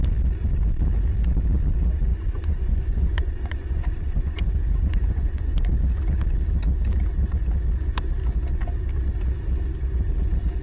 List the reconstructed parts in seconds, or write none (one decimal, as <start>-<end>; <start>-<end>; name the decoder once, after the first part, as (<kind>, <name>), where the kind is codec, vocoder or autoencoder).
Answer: 2.1-5.7 (vocoder, Vocos)